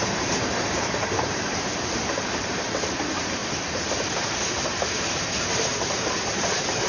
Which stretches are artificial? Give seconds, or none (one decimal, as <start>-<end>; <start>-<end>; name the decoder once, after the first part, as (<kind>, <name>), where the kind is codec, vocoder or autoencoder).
0.0-6.9 (vocoder, BigVGAN v2)